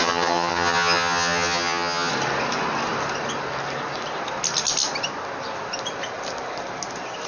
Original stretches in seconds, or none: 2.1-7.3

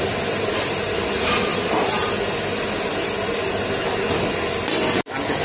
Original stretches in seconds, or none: 0.0-5.4

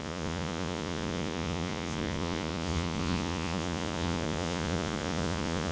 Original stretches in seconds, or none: none